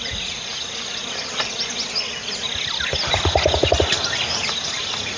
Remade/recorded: recorded